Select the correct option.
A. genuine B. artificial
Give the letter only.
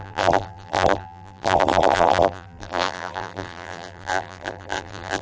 B